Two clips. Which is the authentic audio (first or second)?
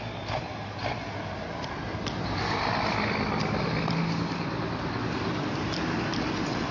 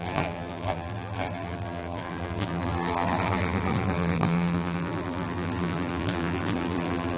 first